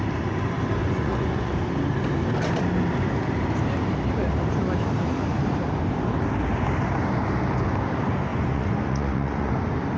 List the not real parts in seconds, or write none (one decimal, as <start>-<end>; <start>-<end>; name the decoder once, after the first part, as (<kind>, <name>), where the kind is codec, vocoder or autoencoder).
0.8-1.5 (vocoder, Vocos); 8.3-9.5